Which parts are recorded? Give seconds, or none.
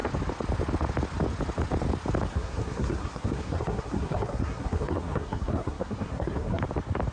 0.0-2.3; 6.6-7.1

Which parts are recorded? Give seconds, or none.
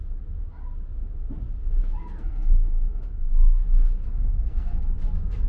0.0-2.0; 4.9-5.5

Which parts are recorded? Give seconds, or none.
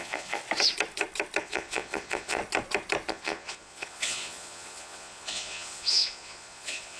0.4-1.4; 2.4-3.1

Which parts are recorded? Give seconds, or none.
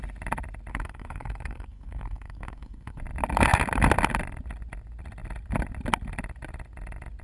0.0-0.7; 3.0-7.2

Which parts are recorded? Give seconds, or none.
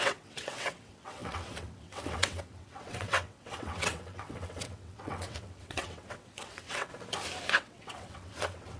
6.9-7.5